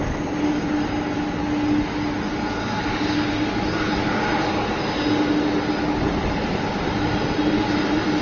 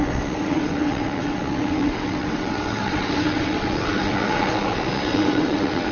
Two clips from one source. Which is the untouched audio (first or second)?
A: first